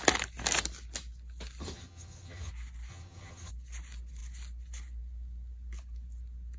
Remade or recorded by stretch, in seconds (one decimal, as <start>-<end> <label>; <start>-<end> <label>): 0.0-1.6 recorded; 1.6-2.5 remade; 2.5-2.9 recorded; 2.9-3.5 remade; 3.5-6.6 recorded